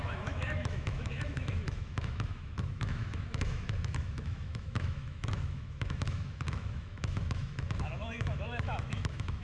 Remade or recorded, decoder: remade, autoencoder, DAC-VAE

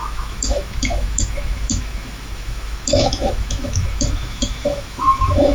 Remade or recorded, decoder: remade, autoencoder, DAC-VAE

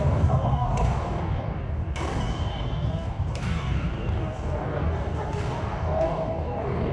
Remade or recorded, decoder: remade, codec, DAC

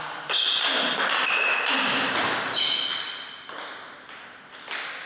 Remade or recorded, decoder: recorded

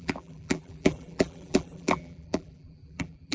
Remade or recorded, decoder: remade, vocoder, BigVGAN v2